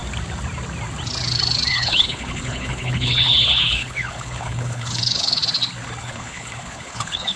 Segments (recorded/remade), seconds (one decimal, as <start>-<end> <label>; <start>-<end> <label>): 0.0-1.7 recorded; 1.7-5.4 remade; 5.4-6.0 recorded; 6.0-7.4 remade